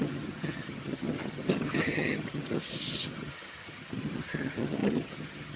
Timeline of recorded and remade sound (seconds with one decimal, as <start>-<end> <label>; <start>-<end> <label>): 0.0-5.6 remade